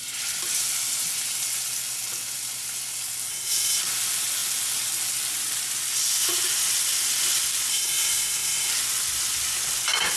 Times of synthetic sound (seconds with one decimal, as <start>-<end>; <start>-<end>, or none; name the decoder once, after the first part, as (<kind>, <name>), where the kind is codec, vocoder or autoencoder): 3.3-3.8 (codec, SNAC); 7.7-8.7